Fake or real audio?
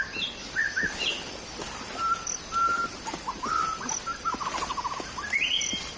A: real